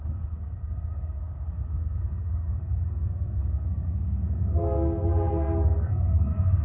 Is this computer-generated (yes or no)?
yes